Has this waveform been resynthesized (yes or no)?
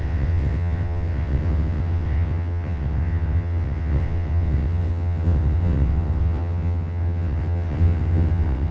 yes